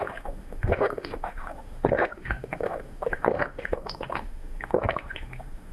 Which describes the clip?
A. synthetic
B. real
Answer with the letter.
A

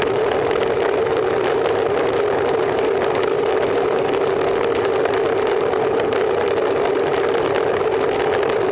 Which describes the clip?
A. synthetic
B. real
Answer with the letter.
B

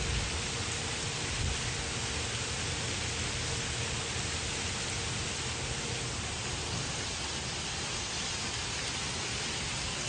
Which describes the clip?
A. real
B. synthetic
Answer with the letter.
A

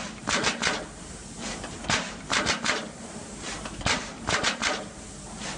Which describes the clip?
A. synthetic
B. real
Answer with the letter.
A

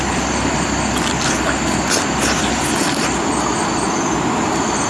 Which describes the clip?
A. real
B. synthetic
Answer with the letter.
A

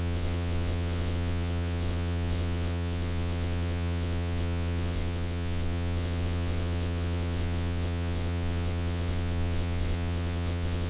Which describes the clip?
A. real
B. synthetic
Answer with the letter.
B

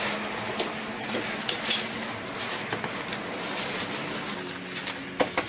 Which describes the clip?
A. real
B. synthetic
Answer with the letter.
A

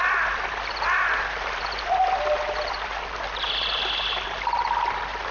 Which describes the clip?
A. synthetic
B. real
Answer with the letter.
B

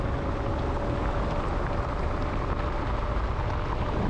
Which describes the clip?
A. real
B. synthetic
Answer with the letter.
A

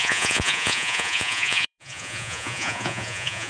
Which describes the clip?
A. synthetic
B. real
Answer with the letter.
A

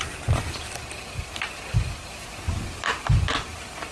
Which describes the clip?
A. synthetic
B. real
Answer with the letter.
B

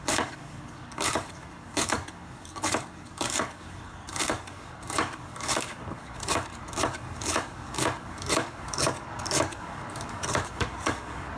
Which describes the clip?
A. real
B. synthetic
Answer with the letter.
B